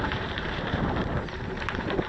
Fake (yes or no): yes